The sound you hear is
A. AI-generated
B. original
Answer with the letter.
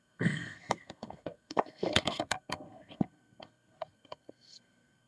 A